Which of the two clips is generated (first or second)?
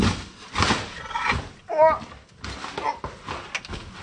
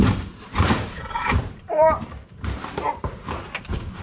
second